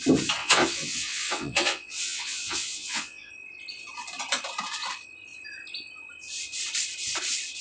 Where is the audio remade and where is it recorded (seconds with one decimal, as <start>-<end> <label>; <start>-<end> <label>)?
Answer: 0.0-0.4 recorded; 0.4-3.3 remade; 3.3-7.6 recorded